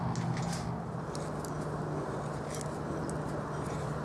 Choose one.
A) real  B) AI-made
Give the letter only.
A